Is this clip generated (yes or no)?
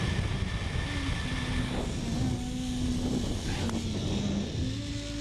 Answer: no